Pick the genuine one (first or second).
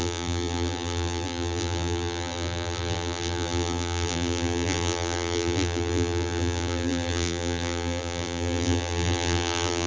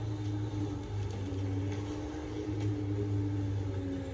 second